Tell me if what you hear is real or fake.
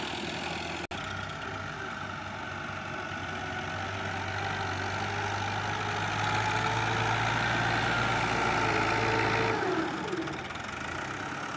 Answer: real